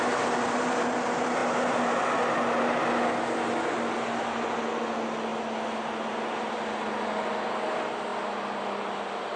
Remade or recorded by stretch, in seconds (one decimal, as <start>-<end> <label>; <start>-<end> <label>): 0.0-9.4 recorded